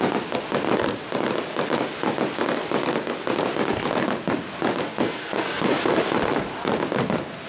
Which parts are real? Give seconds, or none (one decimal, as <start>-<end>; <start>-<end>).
0.0-4.9; 5.7-7.5